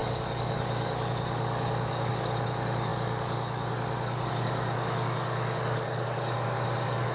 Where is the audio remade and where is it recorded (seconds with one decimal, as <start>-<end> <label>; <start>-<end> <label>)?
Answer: 0.0-7.1 remade